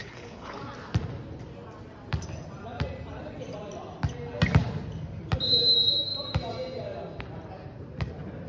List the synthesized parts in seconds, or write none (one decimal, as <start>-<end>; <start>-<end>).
0.0-0.6